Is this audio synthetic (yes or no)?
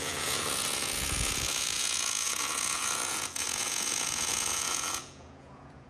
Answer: yes